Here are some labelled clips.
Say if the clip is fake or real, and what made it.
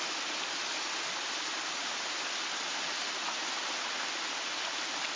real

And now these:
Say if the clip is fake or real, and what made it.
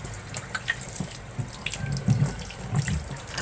real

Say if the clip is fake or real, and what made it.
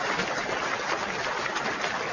real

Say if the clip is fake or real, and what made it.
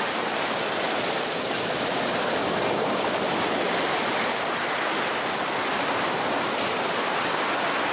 real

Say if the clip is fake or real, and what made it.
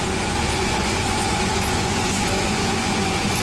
fake, vocoder, Vocos